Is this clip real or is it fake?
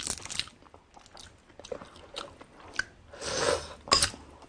real